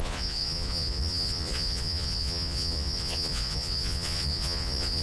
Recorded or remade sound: remade